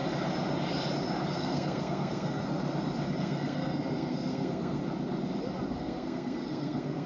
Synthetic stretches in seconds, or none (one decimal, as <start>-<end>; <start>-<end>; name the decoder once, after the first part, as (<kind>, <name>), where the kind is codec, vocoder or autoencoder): 1.3-2.4 (codec, SNAC); 3.2-4.8; 5.8-7.1